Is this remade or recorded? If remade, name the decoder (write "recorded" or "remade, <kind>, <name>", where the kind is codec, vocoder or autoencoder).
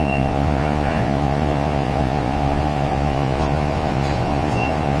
remade, vocoder, Vocos